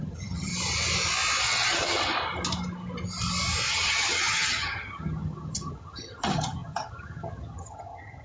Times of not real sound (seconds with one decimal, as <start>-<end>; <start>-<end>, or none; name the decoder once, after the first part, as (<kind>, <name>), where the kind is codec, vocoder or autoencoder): 0.0-0.5 (vocoder, HiFi-GAN); 1.4-2.1; 3.7-8.2